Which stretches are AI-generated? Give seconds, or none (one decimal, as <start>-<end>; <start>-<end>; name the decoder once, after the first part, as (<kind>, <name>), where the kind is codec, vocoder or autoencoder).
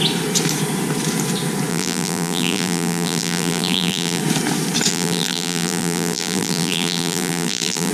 1.7-4.2 (vocoder, BigVGAN v2); 4.9-7.9